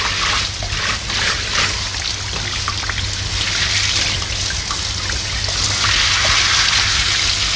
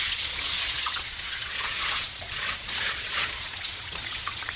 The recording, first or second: first